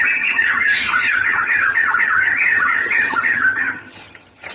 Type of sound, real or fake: fake